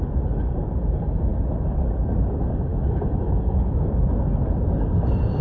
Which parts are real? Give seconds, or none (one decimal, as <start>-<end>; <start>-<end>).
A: 0.0-1.3; 1.8-2.7; 3.9-5.4